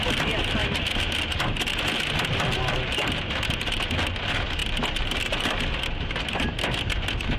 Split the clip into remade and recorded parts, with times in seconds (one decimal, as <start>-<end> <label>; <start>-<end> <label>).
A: 0.0-7.4 recorded